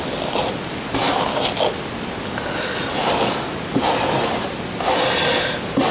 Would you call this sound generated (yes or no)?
no